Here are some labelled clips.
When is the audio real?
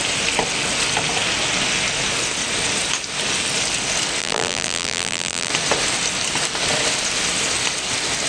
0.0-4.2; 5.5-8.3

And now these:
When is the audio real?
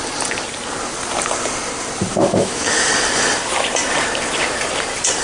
0.0-2.1; 2.9-5.2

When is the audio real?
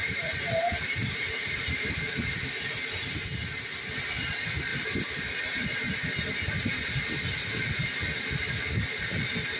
2.0-9.6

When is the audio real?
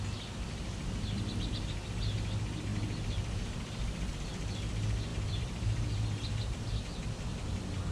0.0-5.1; 6.7-7.9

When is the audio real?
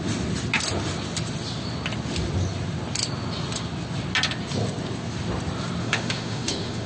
0.0-5.8